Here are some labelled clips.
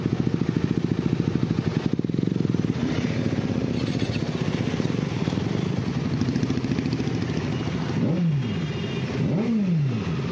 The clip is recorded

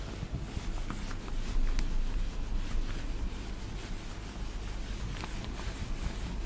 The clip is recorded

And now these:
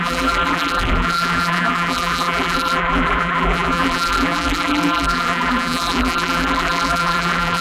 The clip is remade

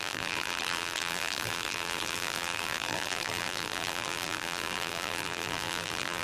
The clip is remade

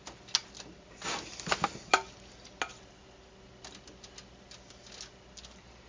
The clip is recorded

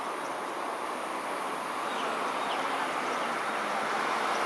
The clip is recorded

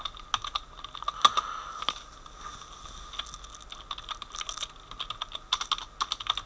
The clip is recorded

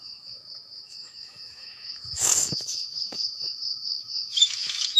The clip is remade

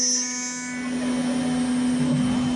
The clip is recorded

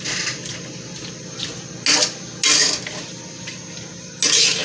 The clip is recorded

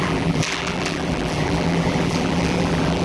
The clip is remade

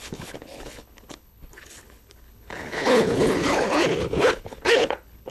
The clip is remade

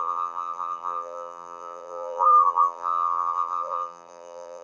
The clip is remade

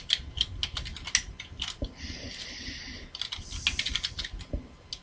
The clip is recorded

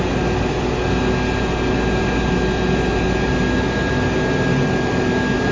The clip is recorded